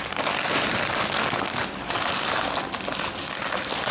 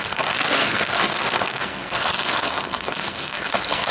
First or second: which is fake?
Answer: second